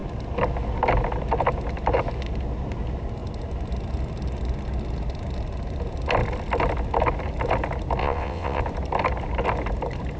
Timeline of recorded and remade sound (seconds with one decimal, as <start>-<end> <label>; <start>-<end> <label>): 0.0-8.0 recorded; 8.0-8.6 remade; 8.6-10.2 recorded